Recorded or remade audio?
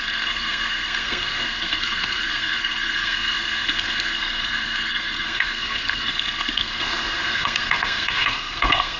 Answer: remade